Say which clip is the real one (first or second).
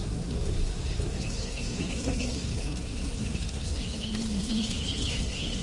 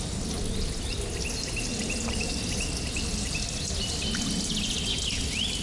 second